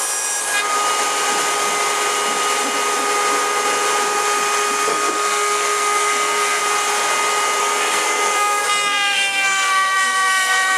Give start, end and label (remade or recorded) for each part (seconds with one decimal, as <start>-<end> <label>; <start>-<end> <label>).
0.0-4.9 recorded; 4.9-6.6 remade; 6.6-7.6 recorded; 7.6-10.8 remade